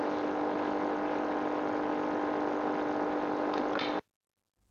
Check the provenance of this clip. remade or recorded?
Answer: recorded